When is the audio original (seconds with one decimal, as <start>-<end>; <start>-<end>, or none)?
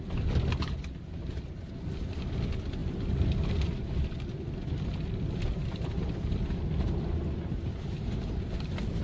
0.0-9.0